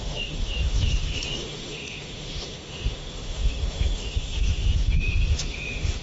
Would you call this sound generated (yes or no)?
yes